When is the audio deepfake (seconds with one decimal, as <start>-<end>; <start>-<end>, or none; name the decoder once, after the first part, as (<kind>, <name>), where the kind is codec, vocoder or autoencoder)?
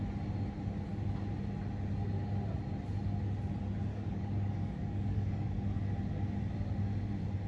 3.9-5.5 (codec, DAC)